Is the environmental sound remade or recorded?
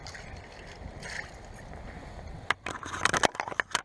recorded